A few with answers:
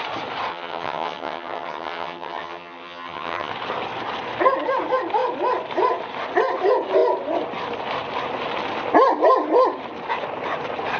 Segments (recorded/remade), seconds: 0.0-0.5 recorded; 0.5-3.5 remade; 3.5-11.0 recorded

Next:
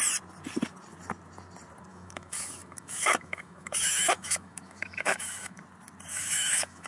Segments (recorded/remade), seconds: 0.0-1.9 recorded; 1.9-5.6 remade; 5.6-6.1 recorded; 6.1-6.9 remade